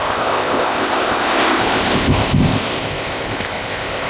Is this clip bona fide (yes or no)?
no